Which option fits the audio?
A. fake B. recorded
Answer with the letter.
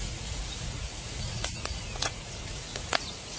A